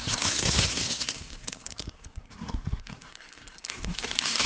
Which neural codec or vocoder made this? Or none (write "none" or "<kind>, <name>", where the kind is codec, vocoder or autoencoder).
codec, SNAC